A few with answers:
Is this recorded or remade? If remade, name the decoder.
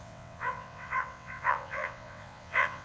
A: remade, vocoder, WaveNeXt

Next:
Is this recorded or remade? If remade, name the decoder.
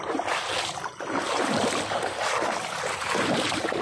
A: recorded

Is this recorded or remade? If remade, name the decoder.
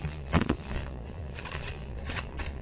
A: remade, vocoder, Vocos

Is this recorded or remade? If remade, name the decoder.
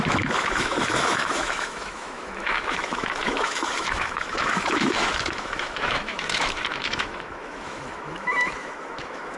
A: remade, autoencoder, DAC-VAE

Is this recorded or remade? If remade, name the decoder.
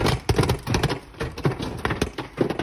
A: recorded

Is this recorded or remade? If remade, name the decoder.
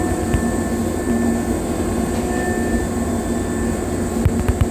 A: recorded